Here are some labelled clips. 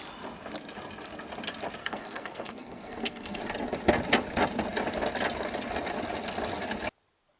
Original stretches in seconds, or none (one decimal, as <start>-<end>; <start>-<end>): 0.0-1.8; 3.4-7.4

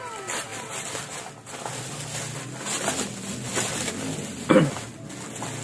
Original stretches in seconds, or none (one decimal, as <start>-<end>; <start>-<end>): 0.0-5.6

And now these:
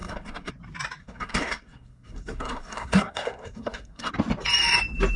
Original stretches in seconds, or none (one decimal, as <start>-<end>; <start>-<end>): 0.5-1.0; 4.1-5.2

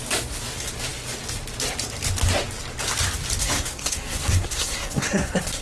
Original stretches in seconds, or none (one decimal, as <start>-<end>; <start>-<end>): 0.0-3.4

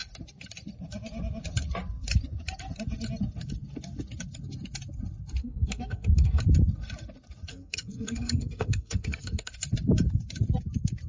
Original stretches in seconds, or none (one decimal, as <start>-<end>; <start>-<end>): 0.0-5.4; 6.4-7.5; 9.5-11.1

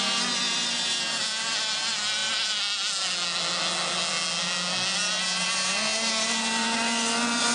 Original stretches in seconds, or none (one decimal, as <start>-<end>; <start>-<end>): 0.0-7.5